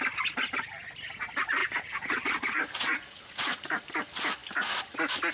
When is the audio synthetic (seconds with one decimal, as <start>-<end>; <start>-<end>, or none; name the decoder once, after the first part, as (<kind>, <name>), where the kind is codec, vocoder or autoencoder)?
1.6-3.8 (vocoder, Vocos)